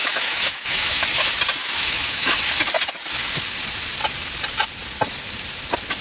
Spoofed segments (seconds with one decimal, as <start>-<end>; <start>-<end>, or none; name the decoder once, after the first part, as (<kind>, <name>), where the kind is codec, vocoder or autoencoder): 0.0-1.0 (autoencoder, DAC-VAE); 1.6-2.4